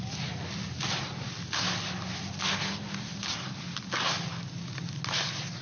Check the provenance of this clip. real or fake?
real